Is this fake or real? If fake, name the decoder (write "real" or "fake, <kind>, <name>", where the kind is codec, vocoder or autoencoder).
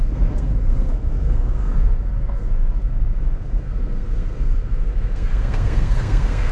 fake, codec, SNAC